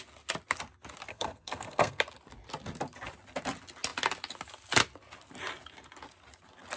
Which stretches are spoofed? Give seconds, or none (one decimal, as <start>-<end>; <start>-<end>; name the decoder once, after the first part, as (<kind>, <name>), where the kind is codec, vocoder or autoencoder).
1.1-2.0 (codec, SNAC)